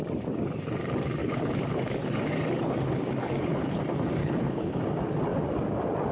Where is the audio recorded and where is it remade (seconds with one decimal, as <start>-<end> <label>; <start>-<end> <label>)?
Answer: 0.0-1.2 recorded; 1.2-2.3 remade; 2.3-3.2 recorded; 3.2-3.8 remade; 3.8-4.2 recorded; 4.2-4.8 remade; 4.8-6.1 recorded